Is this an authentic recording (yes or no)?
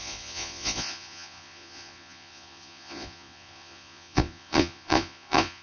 no